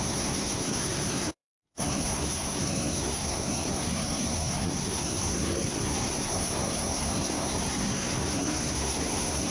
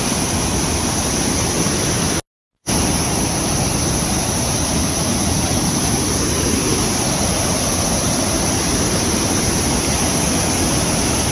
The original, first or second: second